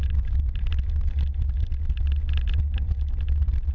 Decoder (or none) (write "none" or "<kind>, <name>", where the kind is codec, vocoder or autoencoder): none